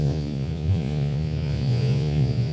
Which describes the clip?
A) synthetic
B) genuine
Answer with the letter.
A